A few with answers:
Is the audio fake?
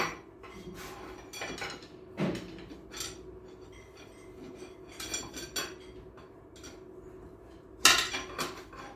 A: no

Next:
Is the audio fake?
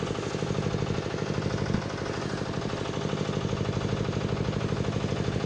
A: no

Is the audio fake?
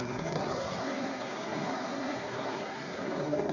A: yes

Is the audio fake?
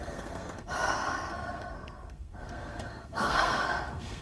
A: yes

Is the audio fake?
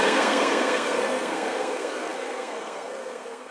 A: yes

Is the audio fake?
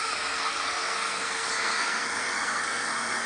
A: yes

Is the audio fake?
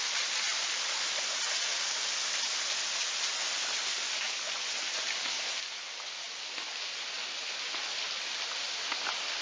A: no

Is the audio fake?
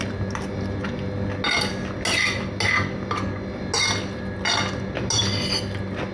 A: no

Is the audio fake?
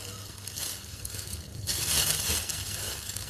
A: yes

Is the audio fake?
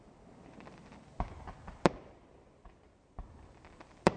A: no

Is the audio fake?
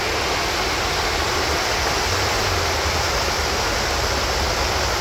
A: no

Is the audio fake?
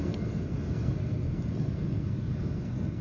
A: yes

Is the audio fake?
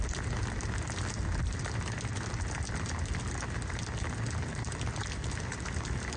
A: no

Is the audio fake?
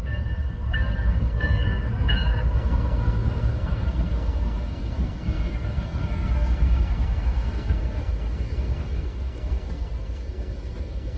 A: yes